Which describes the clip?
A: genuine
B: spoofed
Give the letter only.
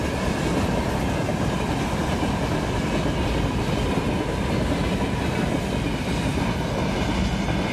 A